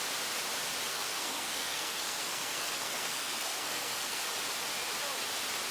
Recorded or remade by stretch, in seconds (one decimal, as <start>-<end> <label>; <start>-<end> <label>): 0.0-0.9 recorded; 0.9-4.3 remade; 4.3-5.7 recorded